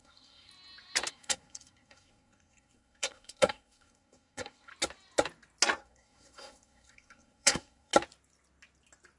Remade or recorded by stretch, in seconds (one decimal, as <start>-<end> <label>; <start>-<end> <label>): 0.0-0.5 remade; 0.5-1.1 recorded; 1.1-4.7 remade; 4.7-5.8 recorded; 5.8-7.9 remade; 7.9-9.2 recorded